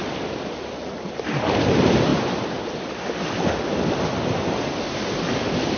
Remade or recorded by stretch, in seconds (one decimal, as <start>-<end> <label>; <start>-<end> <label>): 0.0-5.8 recorded